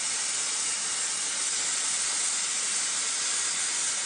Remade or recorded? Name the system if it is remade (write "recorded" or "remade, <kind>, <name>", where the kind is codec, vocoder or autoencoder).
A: recorded